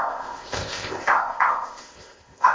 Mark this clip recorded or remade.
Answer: remade